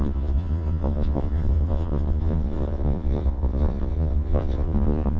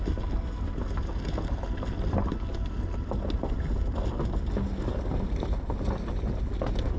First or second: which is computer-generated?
first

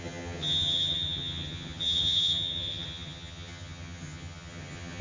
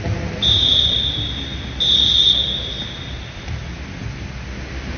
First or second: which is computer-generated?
first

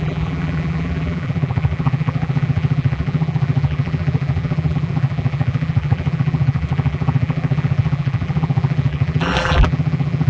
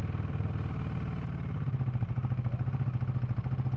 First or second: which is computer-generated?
first